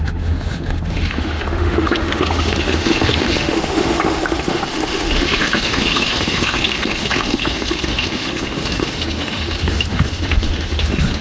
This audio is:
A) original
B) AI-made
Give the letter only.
B